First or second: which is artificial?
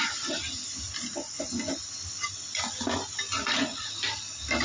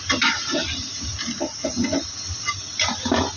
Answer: second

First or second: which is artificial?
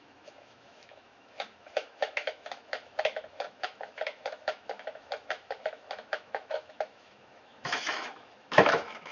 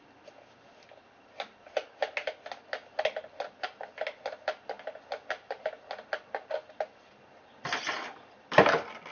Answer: first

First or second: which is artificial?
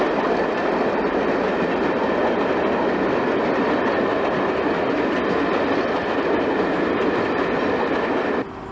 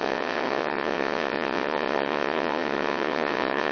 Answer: second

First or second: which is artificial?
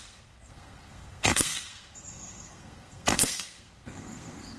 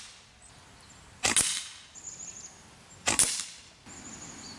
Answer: first